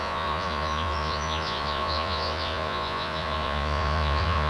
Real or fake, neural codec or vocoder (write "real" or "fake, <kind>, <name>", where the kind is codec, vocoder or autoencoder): fake, vocoder, Vocos